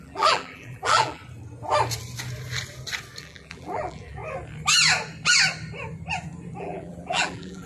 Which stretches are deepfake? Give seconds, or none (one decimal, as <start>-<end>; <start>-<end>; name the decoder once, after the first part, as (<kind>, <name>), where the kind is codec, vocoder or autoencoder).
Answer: 0.0-1.2 (vocoder, BigVGAN v2); 3.2-4.2; 6.6-7.7